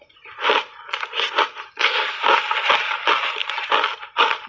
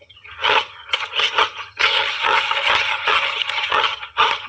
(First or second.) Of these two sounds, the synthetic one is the second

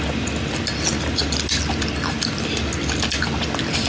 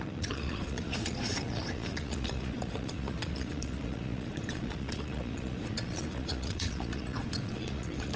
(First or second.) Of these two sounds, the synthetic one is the second